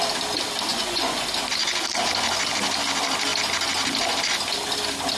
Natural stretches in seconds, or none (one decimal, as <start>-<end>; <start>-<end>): 0.0-0.7; 1.3-5.2